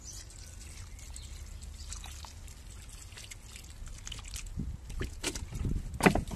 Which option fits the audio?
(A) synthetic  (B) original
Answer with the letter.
B